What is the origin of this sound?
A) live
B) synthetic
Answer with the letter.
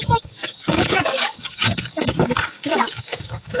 B